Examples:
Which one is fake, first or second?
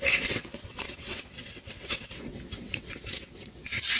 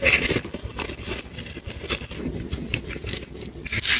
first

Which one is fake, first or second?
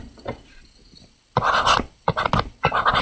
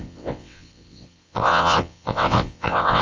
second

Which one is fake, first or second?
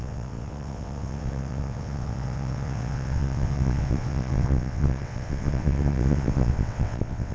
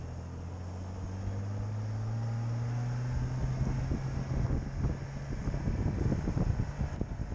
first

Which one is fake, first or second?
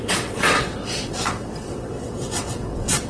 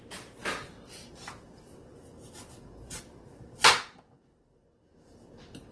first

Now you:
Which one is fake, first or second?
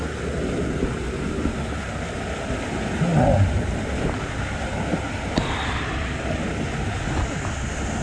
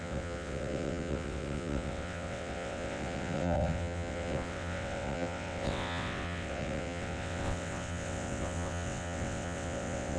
second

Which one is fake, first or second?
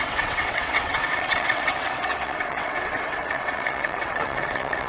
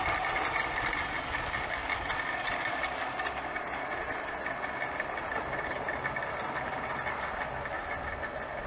first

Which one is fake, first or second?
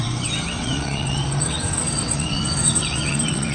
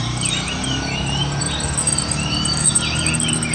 first